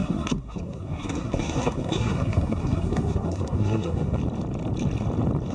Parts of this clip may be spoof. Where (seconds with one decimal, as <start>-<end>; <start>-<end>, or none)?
0.0-4.2